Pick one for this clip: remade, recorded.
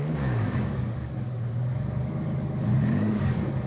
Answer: remade